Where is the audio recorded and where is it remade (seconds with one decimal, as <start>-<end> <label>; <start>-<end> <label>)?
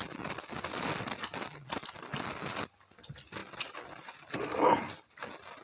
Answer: 0.0-5.6 recorded